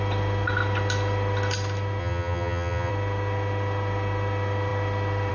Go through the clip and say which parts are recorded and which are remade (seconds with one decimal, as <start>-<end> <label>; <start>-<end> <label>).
0.0-2.0 recorded; 2.0-2.9 remade; 2.9-5.3 recorded